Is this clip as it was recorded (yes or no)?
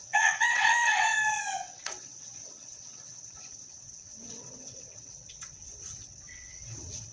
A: no